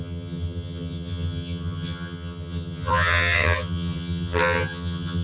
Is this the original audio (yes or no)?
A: no